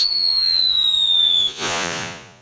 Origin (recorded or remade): remade